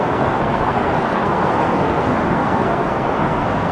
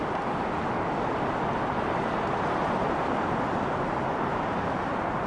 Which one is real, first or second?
second